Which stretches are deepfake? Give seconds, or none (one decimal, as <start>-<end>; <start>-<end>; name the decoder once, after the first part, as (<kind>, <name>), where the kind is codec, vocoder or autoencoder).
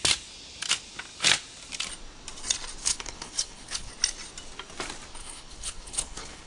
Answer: 2.8-3.9 (codec, HILCodec); 5.2-6.5